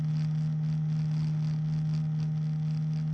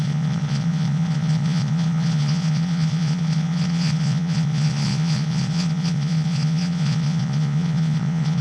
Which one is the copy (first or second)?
second